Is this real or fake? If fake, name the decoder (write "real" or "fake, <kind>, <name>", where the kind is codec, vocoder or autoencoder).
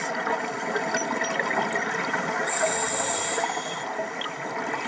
real